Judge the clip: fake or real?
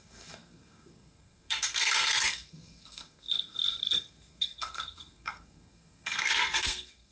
fake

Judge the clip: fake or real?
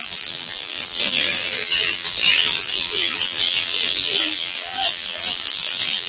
fake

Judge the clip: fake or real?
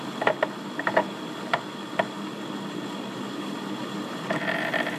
real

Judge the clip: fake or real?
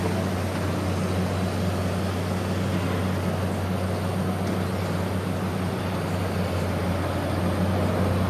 real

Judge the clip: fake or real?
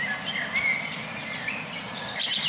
real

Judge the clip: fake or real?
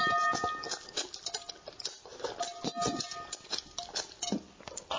real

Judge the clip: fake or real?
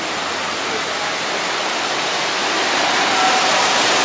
real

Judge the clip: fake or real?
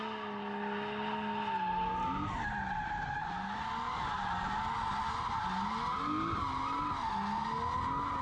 real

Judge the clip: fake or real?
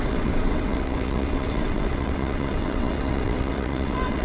fake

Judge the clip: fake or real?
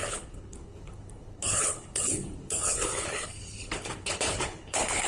fake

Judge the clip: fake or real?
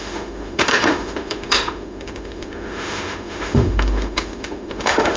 fake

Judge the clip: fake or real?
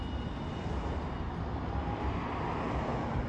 real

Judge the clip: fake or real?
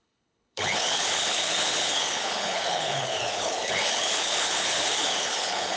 fake